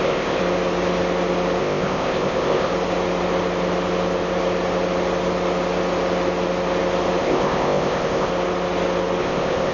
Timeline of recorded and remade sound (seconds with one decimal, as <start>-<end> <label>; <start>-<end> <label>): 0.0-0.4 remade; 0.4-1.6 recorded; 1.6-2.7 remade; 2.7-7.2 recorded; 7.2-8.3 remade; 8.3-9.2 recorded; 9.2-9.7 remade